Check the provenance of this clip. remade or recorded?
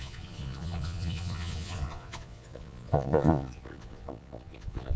remade